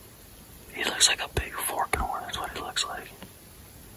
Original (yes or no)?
yes